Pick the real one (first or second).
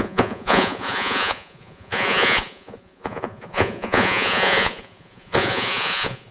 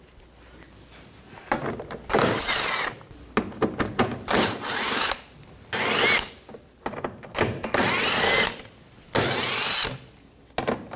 second